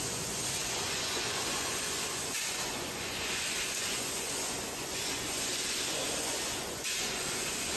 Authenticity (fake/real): fake